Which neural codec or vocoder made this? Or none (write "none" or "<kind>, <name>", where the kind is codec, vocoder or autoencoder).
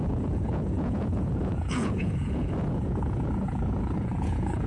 vocoder, Vocos